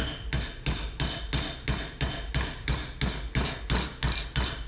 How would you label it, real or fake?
real